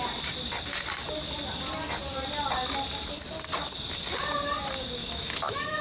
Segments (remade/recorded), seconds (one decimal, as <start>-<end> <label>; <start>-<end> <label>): 0.0-5.0 recorded; 5.0-5.8 remade